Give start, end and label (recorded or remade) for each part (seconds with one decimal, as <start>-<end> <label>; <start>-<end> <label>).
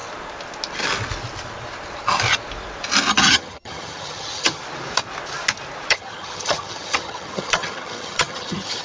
0.0-3.1 recorded; 3.1-4.6 remade; 4.6-5.9 recorded; 5.9-8.8 remade